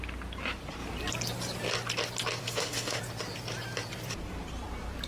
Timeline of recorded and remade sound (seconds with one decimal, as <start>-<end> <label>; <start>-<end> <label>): 0.0-2.4 recorded; 2.4-3.0 remade; 3.0-5.1 recorded